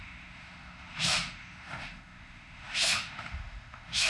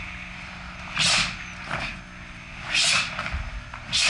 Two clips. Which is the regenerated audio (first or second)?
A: first